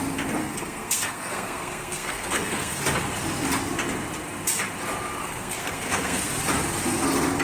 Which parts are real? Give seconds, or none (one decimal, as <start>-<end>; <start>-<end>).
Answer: 0.0-0.4; 2.8-5.2; 6.3-7.4